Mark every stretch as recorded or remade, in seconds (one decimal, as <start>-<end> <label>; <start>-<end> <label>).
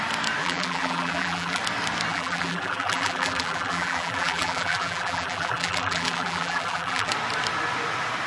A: 0.0-0.4 recorded; 0.4-1.6 remade; 1.6-2.1 recorded; 2.1-7.1 remade; 7.1-8.3 recorded